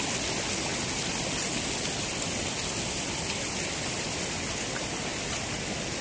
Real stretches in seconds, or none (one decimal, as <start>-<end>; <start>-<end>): 0.0-6.0